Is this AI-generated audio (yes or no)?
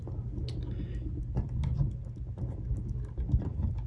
no